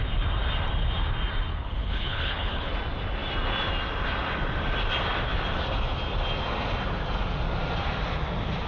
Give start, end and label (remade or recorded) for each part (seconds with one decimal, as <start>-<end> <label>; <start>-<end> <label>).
0.0-1.5 recorded; 1.5-2.7 remade; 2.7-8.7 recorded